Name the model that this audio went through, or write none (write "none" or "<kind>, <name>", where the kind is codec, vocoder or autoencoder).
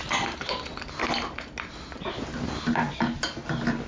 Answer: none